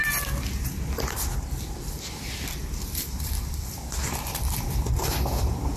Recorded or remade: remade